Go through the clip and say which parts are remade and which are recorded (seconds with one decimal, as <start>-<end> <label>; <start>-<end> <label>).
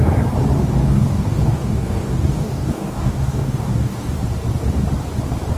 0.0-0.8 recorded; 0.8-4.2 remade; 4.2-5.6 recorded